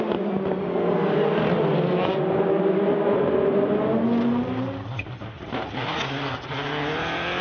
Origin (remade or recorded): recorded